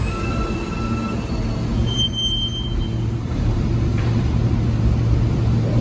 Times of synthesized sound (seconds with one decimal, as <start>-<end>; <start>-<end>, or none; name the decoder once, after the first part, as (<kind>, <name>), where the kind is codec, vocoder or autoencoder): 1.8-4.5 (vocoder, BigVGAN v2)